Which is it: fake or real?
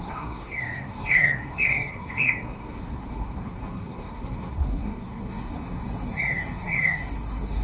fake